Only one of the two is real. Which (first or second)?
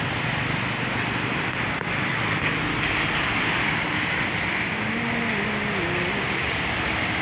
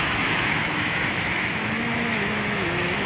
first